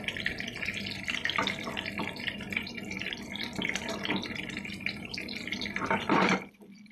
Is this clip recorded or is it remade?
remade